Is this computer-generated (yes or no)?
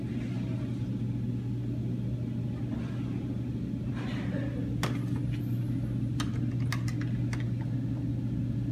no